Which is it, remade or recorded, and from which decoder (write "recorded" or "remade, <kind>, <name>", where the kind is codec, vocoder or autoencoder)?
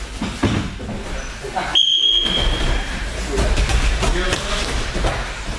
recorded